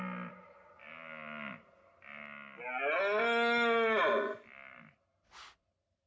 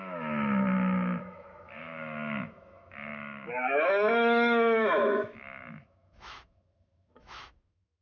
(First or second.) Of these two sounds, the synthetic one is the second